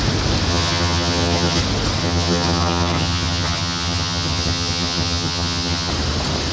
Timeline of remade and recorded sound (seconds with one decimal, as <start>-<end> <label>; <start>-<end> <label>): 0.0-0.5 recorded; 0.5-1.6 remade; 1.6-2.0 recorded; 2.0-5.9 remade; 5.9-6.5 recorded